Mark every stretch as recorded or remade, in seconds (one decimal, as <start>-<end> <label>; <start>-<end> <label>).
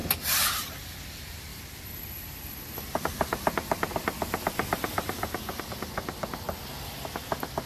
0.0-1.0 remade; 1.0-1.5 recorded; 1.5-5.6 remade; 5.6-7.7 recorded